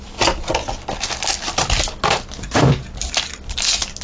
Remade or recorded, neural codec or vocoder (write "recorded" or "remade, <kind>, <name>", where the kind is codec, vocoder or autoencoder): recorded